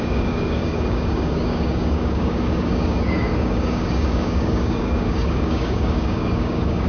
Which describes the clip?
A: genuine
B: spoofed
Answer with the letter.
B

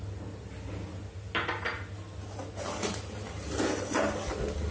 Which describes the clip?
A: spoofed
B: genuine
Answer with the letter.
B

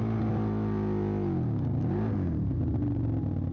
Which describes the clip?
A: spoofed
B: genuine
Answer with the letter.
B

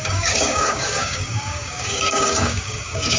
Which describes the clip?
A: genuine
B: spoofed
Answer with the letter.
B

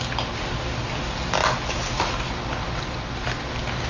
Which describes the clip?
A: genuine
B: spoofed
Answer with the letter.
A